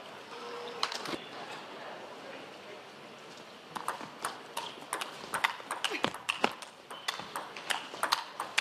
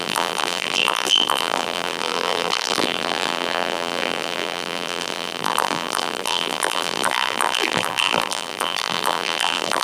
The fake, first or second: second